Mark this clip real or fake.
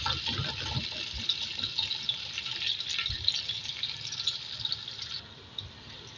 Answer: real